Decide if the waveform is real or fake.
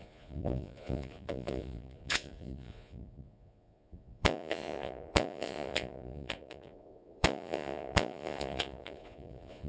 fake